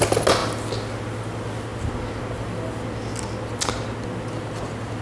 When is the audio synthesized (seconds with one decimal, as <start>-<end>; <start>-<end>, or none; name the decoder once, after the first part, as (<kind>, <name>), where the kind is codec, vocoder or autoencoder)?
none